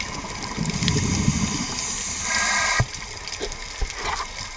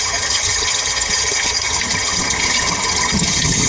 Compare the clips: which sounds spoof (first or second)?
second